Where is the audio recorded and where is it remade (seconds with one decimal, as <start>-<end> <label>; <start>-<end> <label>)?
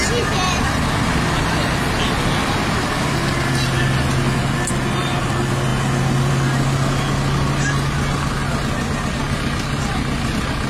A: 0.0-10.7 recorded